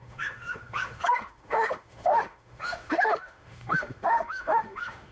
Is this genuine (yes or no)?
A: no